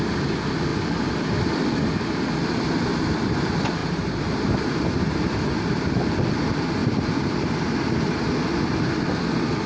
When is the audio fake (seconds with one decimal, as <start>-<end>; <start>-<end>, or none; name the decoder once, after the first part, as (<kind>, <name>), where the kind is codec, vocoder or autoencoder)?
3.8-4.7 (vocoder, BigVGAN v2); 6.8-7.4